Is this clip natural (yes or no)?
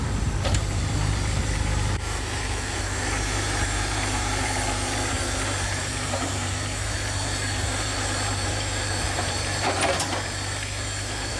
no